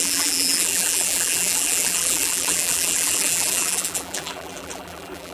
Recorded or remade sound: remade